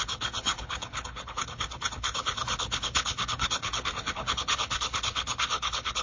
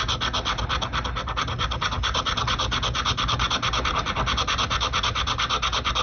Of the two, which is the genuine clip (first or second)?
second